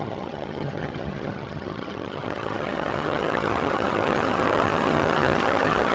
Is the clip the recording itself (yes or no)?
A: no